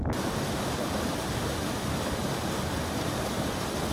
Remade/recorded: recorded